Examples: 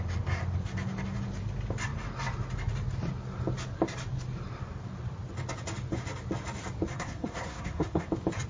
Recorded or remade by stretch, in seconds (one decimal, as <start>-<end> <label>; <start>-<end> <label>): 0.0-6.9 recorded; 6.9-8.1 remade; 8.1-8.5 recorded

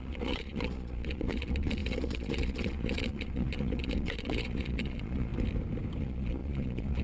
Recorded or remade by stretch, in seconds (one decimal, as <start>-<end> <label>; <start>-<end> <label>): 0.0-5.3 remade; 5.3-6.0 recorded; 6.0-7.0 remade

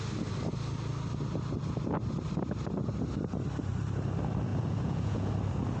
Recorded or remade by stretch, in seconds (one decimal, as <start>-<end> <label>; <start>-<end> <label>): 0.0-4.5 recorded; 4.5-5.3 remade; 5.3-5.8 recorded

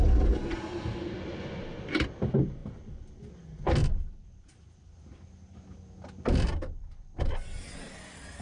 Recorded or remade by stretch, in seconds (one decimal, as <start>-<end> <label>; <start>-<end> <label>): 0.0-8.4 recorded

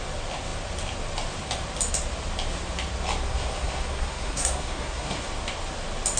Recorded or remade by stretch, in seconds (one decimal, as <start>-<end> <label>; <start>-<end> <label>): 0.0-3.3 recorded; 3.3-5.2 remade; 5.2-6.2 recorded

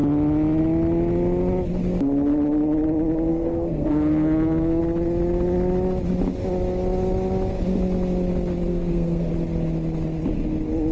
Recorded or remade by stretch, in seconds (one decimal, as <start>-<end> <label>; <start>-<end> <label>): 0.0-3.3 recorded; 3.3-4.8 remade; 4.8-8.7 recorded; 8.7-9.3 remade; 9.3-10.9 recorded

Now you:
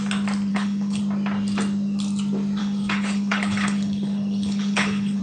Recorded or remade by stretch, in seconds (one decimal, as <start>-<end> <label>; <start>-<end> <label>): 0.0-0.5 recorded; 0.5-1.0 remade; 1.0-2.6 recorded; 2.6-5.2 remade

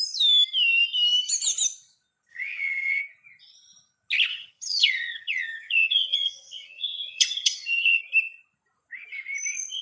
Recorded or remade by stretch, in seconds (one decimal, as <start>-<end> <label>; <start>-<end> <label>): 0.0-2.3 recorded; 2.3-3.0 remade; 3.0-4.3 recorded; 4.3-8.0 remade; 8.0-9.8 recorded